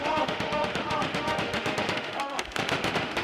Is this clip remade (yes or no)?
yes